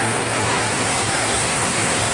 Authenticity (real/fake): fake